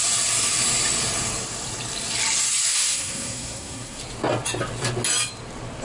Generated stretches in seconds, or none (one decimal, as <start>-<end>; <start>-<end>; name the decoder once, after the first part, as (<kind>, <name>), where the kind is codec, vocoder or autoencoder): 2.7-4.0 (codec, SNAC)